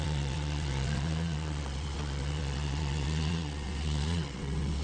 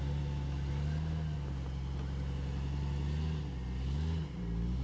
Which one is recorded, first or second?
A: second